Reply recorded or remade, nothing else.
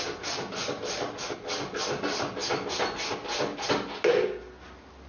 recorded